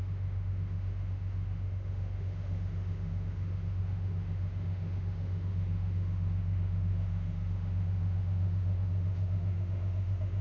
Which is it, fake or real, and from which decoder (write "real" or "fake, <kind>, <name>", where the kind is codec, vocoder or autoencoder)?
fake, autoencoder, DAC-VAE